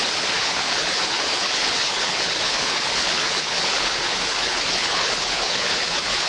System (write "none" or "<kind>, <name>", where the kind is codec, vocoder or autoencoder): codec, HILCodec